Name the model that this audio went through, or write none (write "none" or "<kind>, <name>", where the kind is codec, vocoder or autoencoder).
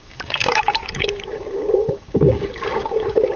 codec, DAC